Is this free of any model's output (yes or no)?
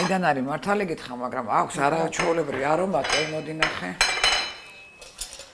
yes